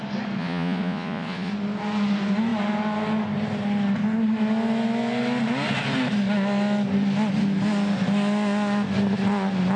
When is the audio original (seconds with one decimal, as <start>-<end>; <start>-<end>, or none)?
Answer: 0.0-0.4; 1.5-9.8